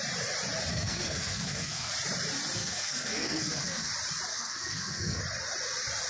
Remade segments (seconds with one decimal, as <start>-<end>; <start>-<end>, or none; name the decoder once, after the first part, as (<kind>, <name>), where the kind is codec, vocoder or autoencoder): 0.7-1.9 (codec, SNAC); 2.6-3.9; 4.3-5.2